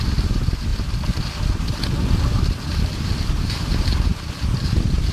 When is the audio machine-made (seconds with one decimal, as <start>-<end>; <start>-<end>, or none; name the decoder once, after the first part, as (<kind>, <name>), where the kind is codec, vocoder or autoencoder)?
none